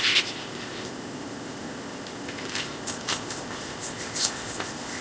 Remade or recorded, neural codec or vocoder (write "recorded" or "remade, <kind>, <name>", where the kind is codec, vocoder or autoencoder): remade, codec, ZipCodec